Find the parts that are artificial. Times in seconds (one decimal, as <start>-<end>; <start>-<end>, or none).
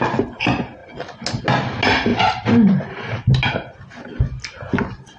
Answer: none